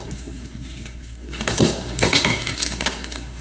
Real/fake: fake